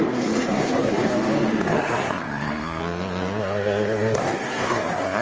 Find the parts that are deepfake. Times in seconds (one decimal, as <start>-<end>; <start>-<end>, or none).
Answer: 0.0-1.1; 1.7-2.8; 3.4-5.2